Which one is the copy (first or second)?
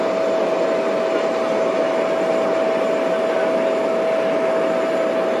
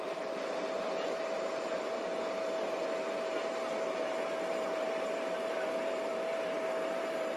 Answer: second